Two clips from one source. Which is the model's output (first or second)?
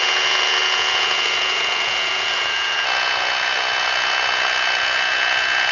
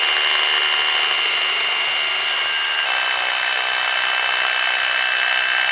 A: first